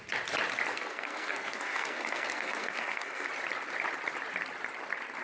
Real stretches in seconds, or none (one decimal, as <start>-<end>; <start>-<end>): 0.0-0.7; 3.3-5.2